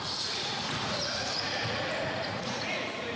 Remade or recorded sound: remade